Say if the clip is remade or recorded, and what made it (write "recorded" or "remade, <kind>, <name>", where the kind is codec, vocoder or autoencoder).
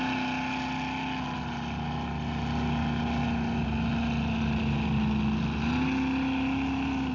recorded